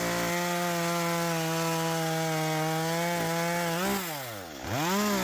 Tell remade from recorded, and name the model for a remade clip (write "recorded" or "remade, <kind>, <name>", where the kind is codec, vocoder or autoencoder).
recorded